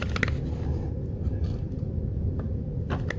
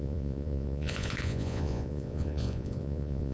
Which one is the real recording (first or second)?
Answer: first